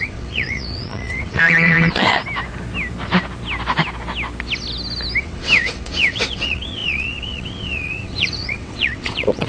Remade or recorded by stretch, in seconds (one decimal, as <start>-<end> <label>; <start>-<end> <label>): 0.0-2.2 remade; 2.2-5.2 recorded; 5.2-9.5 remade